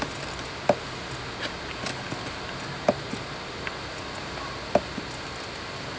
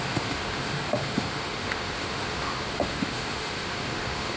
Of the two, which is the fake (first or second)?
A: second